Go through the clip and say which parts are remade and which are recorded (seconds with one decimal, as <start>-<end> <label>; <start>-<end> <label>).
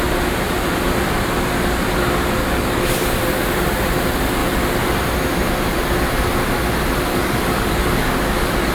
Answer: 0.0-2.4 recorded; 2.4-3.2 remade; 3.2-7.1 recorded; 7.1-8.7 remade